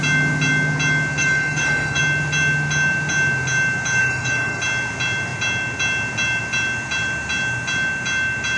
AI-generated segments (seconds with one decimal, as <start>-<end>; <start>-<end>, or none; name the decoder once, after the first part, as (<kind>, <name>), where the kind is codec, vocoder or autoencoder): 1.2-2.0 (codec, DAC); 4.0-4.6